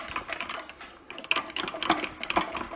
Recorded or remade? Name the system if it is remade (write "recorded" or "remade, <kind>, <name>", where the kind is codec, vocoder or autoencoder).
recorded